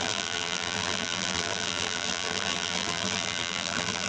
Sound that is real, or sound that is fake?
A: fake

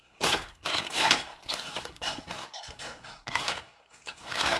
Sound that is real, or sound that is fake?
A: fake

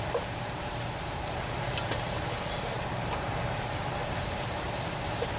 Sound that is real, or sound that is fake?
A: fake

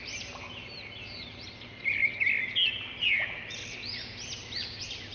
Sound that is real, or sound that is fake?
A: real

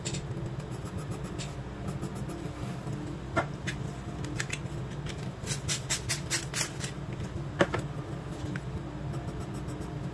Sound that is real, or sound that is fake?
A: real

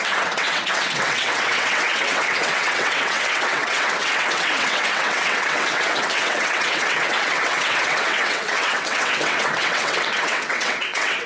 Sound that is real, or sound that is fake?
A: fake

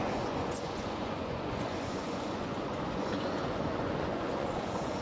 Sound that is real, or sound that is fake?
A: fake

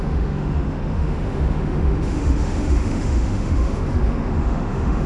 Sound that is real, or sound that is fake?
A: fake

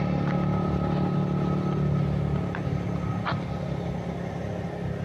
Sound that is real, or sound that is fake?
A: real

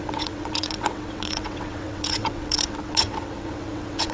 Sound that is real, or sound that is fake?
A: fake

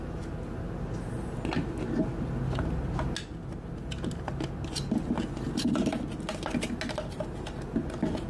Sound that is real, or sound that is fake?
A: real